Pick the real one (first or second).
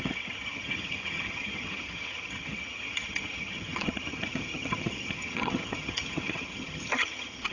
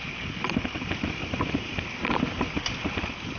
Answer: second